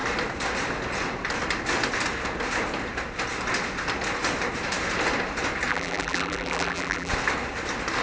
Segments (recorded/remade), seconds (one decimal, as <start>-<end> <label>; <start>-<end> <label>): 0.0-5.7 recorded; 5.7-7.1 remade; 7.1-8.0 recorded